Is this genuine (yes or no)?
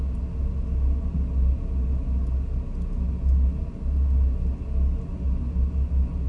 yes